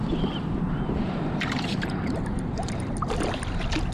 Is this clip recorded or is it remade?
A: remade